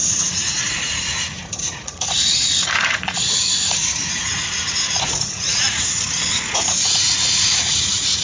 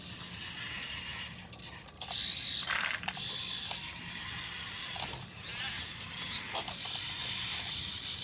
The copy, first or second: first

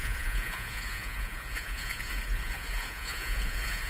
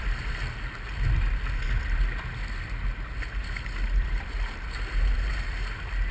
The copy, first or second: first